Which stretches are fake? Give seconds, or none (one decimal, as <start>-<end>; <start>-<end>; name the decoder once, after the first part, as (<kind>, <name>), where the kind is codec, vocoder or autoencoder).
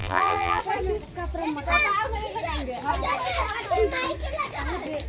0.0-0.6 (vocoder, BigVGAN v2)